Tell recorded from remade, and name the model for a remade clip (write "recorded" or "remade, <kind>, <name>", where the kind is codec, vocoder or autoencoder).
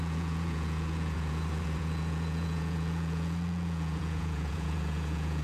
remade, vocoder, Vocos